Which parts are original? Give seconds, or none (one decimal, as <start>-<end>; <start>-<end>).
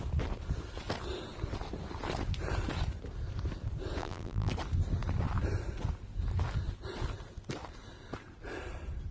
0.0-4.0; 4.5-9.1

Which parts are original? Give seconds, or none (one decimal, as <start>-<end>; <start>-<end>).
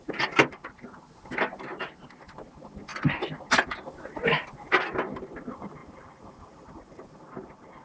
0.0-5.8; 7.2-7.8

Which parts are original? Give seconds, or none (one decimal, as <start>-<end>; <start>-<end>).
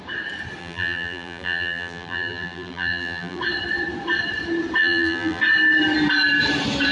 0.0-0.6; 3.4-4.8; 5.4-6.9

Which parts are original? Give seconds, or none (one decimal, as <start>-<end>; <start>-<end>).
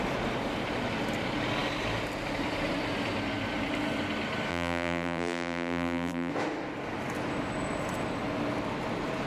0.0-4.5; 6.3-9.3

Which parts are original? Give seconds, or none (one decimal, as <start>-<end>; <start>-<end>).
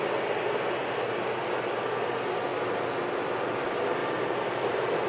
0.0-5.1